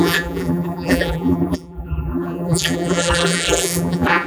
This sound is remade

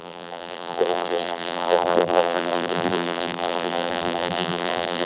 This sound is remade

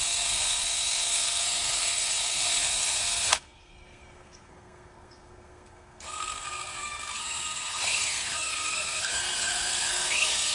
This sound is remade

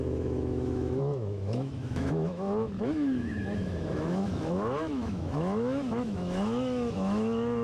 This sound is remade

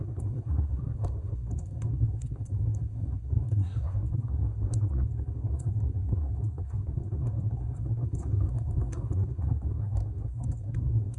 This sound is remade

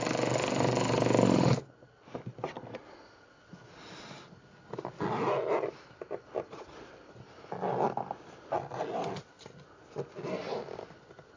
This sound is recorded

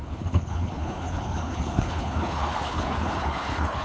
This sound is remade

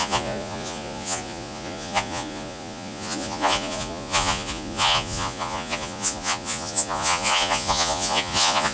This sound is remade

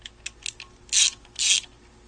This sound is recorded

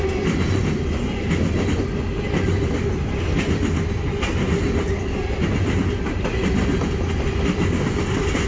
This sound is recorded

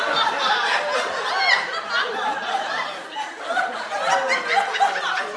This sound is recorded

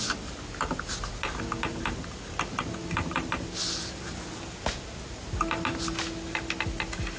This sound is recorded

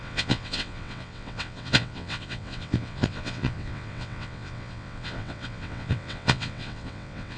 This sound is remade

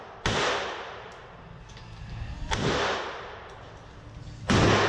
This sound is recorded